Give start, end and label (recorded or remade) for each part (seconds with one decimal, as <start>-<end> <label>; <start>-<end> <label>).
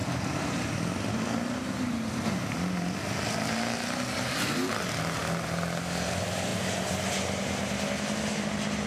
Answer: 0.0-1.1 remade; 1.1-8.9 recorded